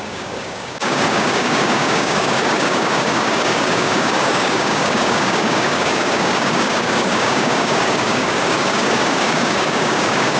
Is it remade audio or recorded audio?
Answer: remade